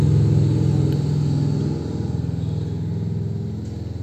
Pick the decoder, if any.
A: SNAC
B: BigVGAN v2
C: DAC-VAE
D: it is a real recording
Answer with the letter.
D